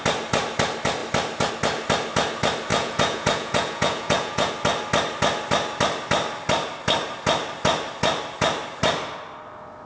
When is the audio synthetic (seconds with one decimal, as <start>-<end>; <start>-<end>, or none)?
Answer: 2.7-4.5